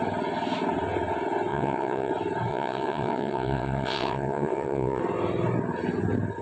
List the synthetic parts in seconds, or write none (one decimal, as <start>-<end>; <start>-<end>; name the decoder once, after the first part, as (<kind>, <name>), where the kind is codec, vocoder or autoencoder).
1.5-2.1 (vocoder, WaveNeXt); 2.5-5.0